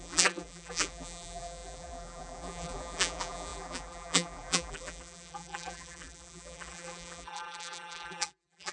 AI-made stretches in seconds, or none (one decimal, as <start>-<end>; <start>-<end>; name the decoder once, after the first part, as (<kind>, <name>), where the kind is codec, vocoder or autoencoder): 0.0-8.7 (vocoder, BigVGAN v2)